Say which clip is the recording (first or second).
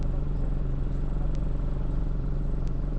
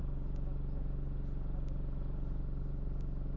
second